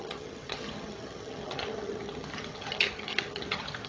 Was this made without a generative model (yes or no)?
no